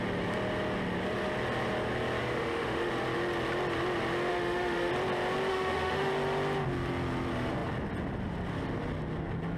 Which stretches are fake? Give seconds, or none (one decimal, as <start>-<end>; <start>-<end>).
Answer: 2.2-2.9; 4.3-4.9; 5.5-6.1